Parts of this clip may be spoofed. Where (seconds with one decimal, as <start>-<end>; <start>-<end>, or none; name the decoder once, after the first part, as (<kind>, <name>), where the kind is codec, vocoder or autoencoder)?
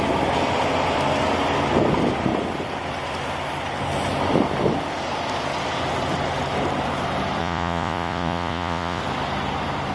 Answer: 7.4-9.0 (vocoder, Vocos)